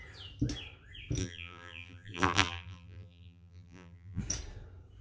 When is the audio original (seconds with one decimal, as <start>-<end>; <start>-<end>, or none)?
0.0-1.2; 4.2-5.0